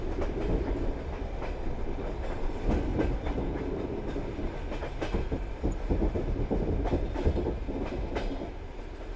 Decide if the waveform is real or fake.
real